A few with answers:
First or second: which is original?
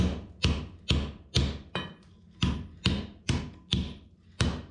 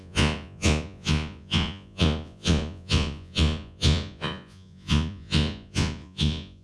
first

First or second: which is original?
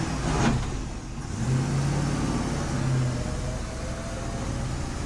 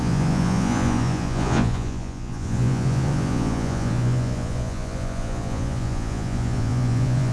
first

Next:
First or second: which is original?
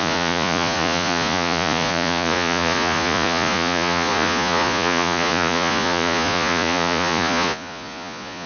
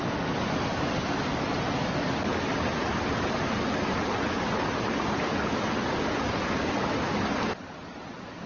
second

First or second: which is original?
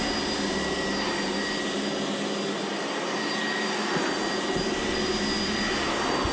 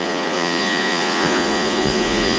first